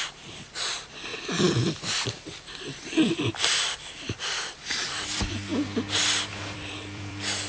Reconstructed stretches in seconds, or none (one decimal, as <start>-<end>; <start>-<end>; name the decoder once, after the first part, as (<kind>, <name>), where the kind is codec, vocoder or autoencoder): 0.0-5.5 (vocoder, BigVGAN v2); 6.3-7.5